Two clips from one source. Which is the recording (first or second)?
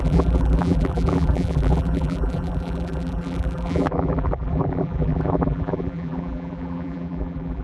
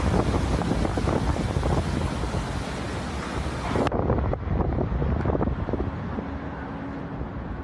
second